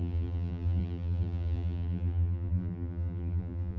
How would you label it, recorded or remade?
remade